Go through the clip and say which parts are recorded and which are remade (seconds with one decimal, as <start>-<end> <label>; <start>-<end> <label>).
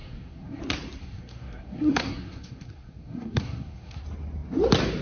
0.0-0.6 remade; 0.6-1.0 recorded; 1.0-4.0 remade; 4.0-5.0 recorded